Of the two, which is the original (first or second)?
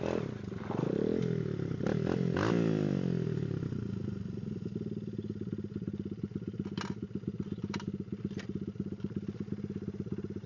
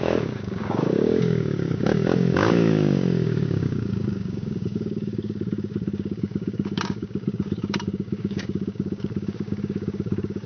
first